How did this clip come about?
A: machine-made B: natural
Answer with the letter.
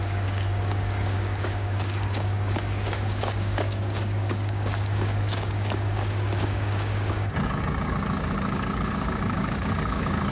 A